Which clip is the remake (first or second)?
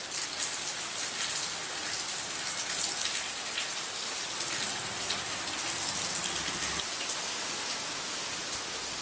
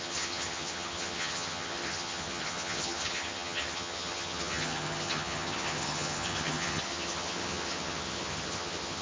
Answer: second